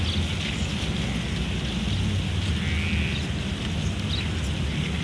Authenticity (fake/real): real